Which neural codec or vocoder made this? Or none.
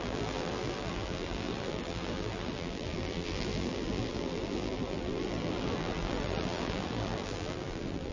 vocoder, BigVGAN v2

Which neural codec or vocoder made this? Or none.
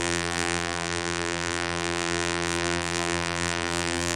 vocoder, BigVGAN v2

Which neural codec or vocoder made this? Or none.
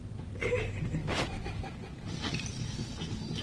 none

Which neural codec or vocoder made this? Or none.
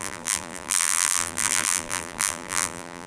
vocoder, BigVGAN v2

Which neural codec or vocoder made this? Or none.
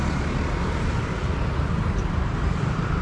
vocoder, BigVGAN v2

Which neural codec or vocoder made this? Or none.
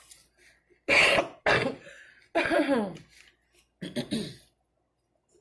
none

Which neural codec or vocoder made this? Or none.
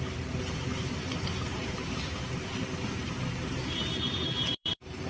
vocoder, BigVGAN v2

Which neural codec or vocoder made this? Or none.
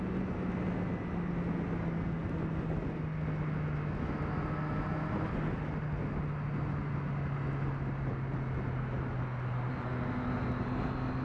none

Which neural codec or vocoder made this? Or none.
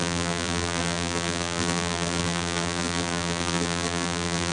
vocoder, BigVGAN v2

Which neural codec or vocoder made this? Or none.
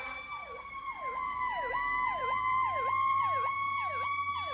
vocoder, BigVGAN v2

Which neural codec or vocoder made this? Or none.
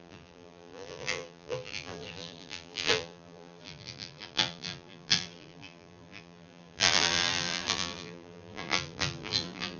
vocoder, BigVGAN v2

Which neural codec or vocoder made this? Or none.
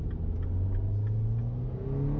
none